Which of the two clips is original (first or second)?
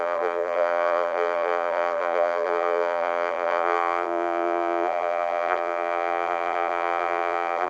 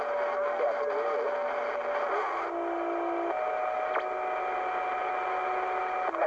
second